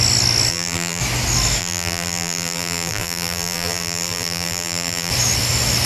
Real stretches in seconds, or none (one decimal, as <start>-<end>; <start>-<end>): 0.0-0.5; 1.0-1.6; 5.1-5.9